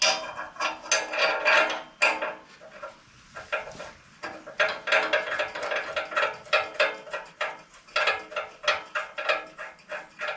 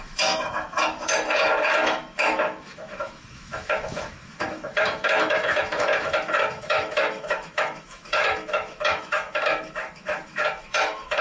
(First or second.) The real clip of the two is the first